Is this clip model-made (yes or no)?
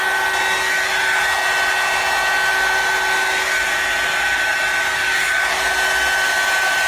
no